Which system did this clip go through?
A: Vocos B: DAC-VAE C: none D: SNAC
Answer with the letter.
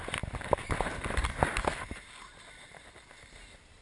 C